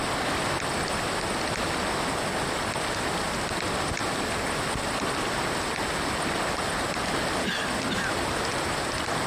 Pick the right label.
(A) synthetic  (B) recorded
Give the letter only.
B